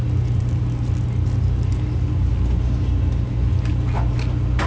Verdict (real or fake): real